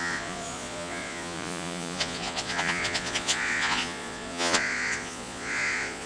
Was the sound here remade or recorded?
remade